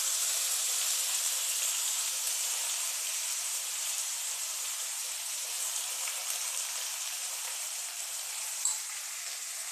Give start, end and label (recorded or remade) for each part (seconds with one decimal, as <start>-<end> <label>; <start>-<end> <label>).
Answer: 0.0-6.2 remade; 6.2-7.0 recorded; 7.0-9.7 remade